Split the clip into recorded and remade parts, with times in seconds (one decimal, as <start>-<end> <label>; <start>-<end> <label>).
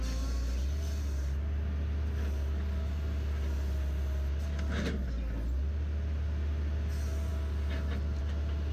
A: 0.0-8.7 recorded